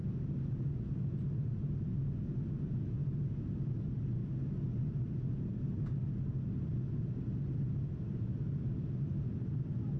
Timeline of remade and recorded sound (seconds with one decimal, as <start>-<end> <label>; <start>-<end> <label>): 0.0-10.0 recorded